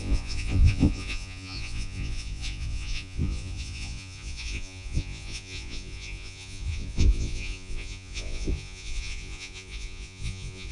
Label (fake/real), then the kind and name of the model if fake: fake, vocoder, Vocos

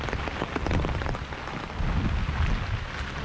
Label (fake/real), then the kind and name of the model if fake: real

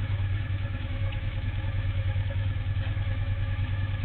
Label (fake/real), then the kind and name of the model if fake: fake, autoencoder, DAC-VAE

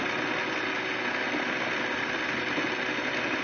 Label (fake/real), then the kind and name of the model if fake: real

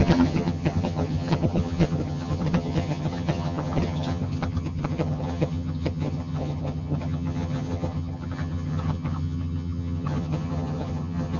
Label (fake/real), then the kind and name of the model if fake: fake, vocoder, HiFi-GAN